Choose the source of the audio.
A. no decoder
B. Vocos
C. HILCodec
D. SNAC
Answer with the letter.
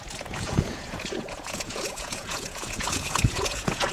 B